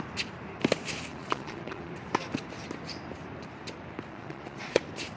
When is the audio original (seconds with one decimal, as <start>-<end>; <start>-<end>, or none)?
0.0-1.1; 1.9-4.1; 4.8-5.2